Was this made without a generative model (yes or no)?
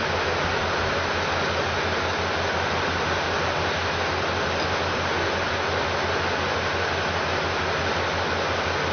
yes